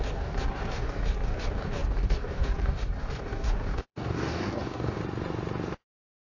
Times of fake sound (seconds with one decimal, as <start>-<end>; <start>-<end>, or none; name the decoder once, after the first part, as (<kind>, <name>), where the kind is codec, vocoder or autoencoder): 0.0-5.0 (codec, DAC)